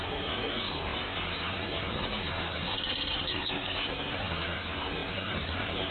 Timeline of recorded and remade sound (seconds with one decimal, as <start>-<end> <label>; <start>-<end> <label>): 0.0-5.9 remade